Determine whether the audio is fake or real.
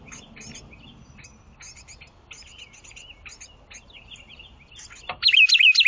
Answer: real